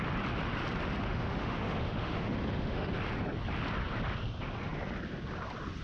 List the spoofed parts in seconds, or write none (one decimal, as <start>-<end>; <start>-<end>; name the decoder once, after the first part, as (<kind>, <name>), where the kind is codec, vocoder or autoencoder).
1.0-2.9 (autoencoder, DAC-VAE)